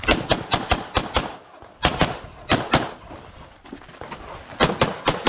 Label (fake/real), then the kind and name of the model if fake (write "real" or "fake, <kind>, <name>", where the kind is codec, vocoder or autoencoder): real